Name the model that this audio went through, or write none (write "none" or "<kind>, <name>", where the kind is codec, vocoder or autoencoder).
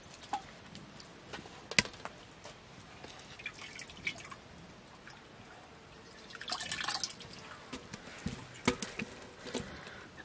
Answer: none